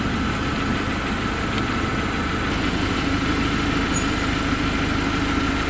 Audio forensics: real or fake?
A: real